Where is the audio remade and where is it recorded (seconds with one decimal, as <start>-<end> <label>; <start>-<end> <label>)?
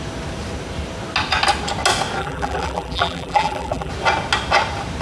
0.0-2.2 recorded; 2.2-3.9 remade; 3.9-5.0 recorded